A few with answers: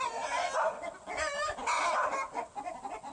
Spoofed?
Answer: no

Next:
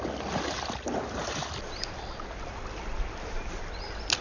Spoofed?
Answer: no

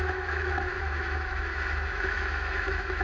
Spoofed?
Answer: yes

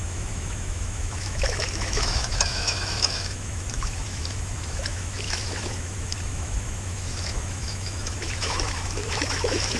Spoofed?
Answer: yes